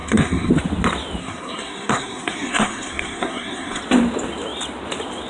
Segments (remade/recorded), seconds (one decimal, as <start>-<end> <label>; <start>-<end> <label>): 0.0-0.5 remade; 0.5-1.2 recorded; 1.2-3.8 remade; 3.8-5.3 recorded